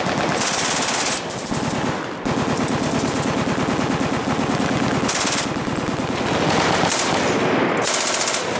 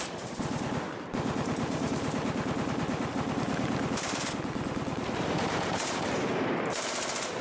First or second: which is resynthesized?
second